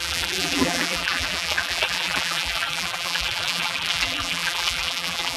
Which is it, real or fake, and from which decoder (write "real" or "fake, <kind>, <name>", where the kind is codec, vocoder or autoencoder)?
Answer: fake, vocoder, BigVGAN v2